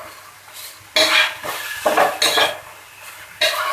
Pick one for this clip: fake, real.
real